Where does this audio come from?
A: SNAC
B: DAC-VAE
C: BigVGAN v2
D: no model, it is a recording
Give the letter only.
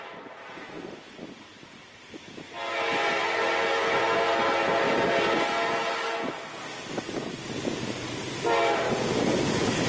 D